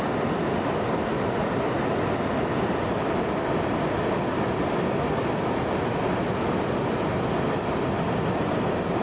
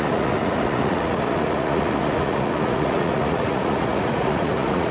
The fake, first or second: second